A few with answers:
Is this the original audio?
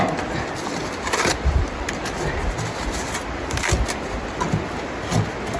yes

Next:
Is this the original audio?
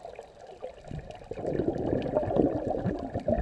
yes